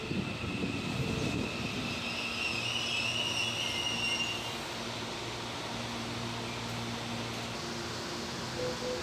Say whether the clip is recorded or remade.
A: recorded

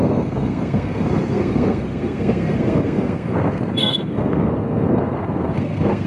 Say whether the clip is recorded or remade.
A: remade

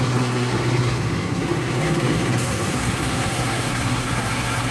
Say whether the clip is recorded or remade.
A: remade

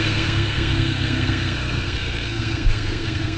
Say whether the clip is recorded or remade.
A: remade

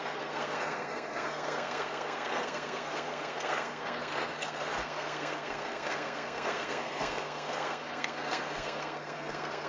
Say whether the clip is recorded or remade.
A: remade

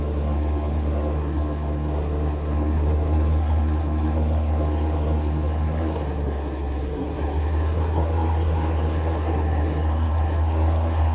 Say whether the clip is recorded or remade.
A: remade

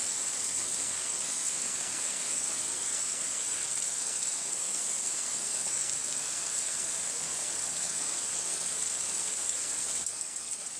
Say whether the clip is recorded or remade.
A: remade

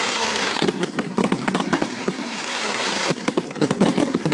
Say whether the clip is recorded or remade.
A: remade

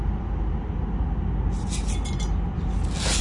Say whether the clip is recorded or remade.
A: recorded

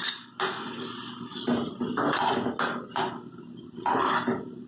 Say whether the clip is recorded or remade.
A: recorded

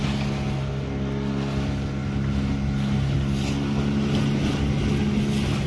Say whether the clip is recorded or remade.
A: recorded